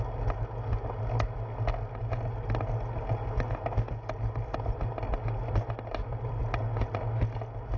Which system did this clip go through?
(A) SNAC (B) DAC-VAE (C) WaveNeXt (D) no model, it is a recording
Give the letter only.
D